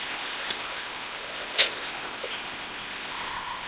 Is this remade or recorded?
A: remade